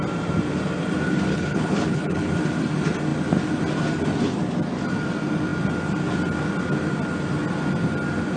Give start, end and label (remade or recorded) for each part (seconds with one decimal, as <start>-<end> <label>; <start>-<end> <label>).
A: 0.0-1.3 recorded; 1.3-2.3 remade; 2.3-8.4 recorded